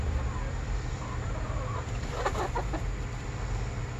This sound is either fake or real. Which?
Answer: fake